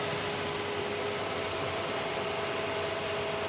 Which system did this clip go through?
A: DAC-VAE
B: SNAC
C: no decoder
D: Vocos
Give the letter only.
C